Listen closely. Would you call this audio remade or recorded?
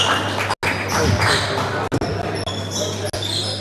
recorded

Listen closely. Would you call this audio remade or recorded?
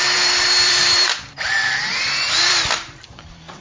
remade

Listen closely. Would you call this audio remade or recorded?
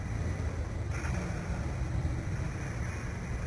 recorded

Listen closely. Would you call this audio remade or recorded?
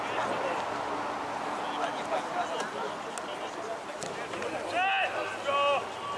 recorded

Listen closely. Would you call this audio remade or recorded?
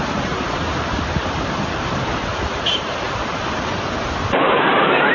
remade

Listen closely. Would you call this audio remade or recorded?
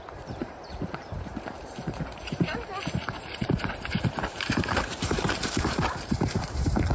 remade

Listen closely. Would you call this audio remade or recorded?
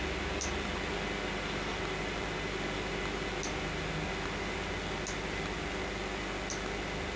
recorded